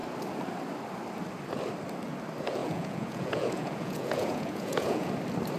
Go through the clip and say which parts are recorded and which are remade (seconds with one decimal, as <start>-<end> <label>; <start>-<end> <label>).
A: 0.0-2.6 recorded; 2.6-5.1 remade; 5.1-5.6 recorded

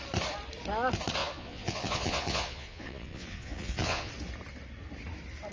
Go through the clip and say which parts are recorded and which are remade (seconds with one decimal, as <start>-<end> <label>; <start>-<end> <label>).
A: 0.0-1.2 recorded; 1.2-4.1 remade; 4.1-5.5 recorded